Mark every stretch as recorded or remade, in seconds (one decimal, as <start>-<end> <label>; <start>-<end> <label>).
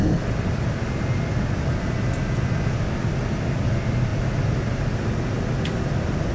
0.0-6.3 recorded